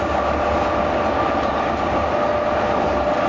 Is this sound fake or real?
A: real